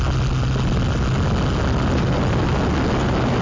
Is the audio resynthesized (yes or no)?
no